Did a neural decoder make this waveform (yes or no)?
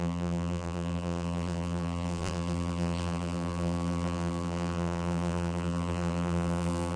yes